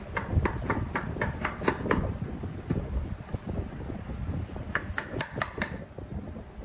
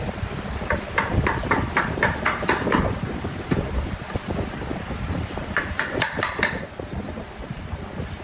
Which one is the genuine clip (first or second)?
first